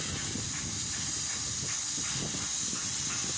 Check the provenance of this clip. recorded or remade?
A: recorded